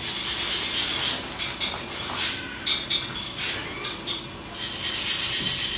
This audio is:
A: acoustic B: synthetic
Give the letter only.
A